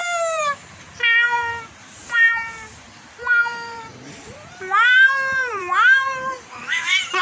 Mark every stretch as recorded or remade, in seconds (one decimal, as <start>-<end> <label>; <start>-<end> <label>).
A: 0.0-7.2 remade